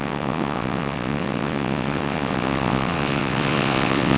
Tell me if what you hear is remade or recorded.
remade